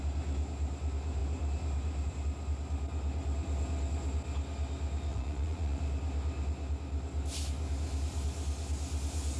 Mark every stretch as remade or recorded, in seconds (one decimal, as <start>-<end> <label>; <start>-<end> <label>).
0.0-5.1 recorded; 5.1-5.8 remade; 5.8-9.4 recorded